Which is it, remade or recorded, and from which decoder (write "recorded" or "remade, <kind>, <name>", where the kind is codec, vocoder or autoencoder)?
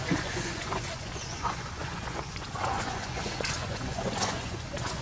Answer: remade, vocoder, Vocos